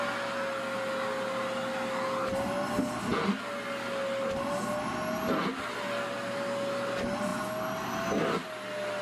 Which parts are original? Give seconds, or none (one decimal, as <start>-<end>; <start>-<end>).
0.0-9.0